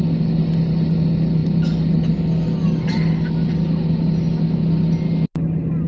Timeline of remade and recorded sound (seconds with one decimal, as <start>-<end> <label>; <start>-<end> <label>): 0.0-5.9 recorded